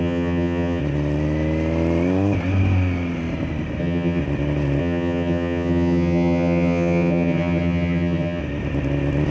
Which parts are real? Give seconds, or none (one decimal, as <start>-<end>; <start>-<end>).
0.8-3.8; 4.2-4.8; 8.4-9.3